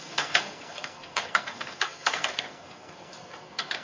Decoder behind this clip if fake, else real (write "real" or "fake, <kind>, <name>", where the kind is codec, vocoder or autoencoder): fake, codec, SNAC